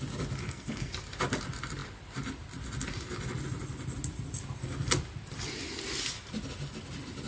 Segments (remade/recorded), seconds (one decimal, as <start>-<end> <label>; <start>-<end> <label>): 0.0-0.4 recorded; 0.4-0.9 remade; 0.9-7.3 recorded